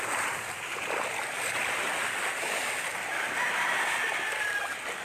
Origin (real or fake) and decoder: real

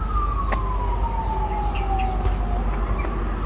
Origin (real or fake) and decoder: real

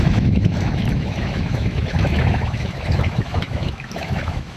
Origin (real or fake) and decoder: fake, autoencoder, DAC-VAE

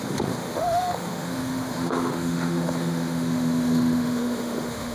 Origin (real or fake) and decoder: fake, autoencoder, DAC-VAE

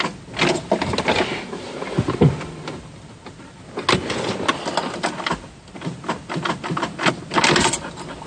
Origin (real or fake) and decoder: real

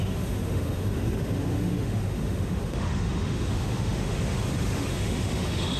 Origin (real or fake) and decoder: fake, autoencoder, DAC-VAE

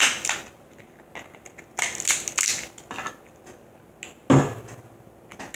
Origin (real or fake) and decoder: real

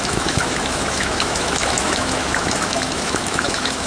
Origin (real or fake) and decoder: fake, autoencoder, DAC-VAE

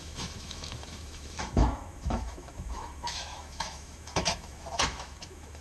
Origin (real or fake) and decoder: fake, autoencoder, DAC-VAE